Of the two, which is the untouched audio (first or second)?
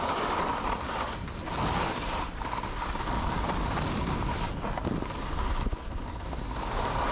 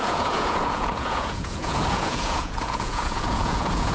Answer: first